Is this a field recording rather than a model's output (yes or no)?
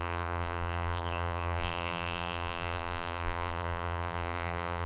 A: no